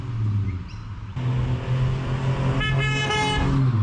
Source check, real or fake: real